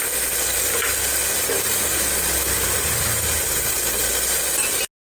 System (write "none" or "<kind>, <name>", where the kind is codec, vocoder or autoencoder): none